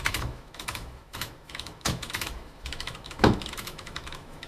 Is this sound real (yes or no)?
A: no